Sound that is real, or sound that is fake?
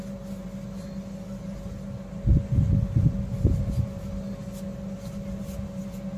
real